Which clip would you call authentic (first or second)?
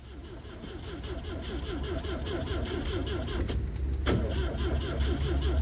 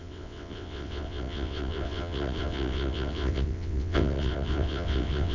first